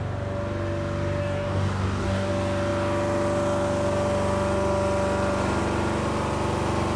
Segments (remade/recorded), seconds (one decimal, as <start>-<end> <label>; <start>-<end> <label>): 0.0-1.2 recorded; 1.2-2.3 remade; 2.3-7.0 recorded